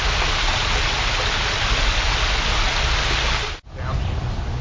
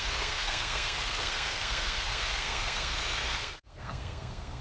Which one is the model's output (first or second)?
second